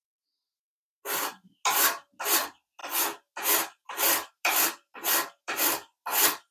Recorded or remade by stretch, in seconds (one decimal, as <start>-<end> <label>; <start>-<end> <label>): 0.0-6.5 recorded